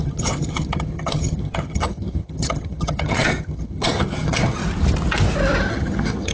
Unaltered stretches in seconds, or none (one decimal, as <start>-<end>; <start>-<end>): 4.6-5.7